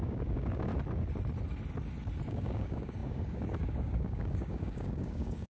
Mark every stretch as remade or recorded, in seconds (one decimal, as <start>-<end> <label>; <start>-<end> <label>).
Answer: 0.0-0.7 remade; 0.7-2.3 recorded; 2.3-5.6 remade